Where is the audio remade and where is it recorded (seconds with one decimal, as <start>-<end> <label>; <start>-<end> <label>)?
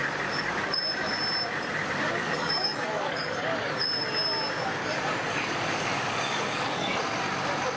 0.0-2.1 recorded; 2.1-3.7 remade; 3.7-4.8 recorded; 4.8-7.0 remade; 7.0-7.8 recorded